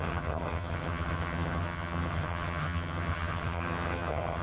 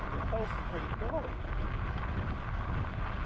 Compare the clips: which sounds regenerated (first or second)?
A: first